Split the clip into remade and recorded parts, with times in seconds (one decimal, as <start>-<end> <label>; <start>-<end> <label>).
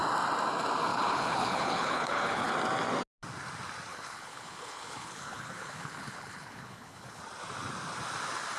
0.0-0.9 recorded; 0.9-2.5 remade; 2.5-3.9 recorded; 3.9-7.2 remade; 7.2-8.6 recorded